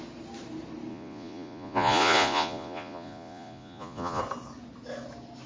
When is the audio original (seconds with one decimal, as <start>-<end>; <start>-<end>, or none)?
0.0-0.9; 4.2-5.5

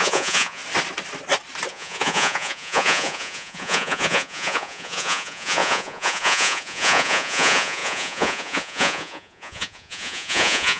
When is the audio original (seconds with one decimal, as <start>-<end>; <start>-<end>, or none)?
0.6-1.7

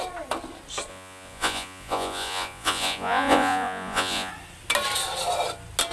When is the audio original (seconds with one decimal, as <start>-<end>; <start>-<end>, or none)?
0.0-0.9; 4.3-5.9

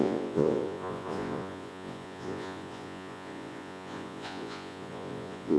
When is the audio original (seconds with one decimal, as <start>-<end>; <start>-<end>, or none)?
none

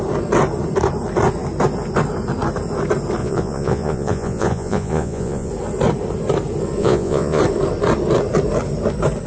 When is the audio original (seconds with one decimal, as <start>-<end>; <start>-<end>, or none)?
0.0-3.2; 5.5-6.8; 7.4-9.3

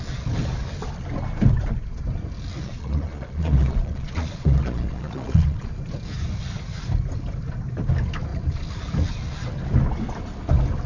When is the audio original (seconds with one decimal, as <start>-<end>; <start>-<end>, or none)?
0.0-2.6; 5.7-10.9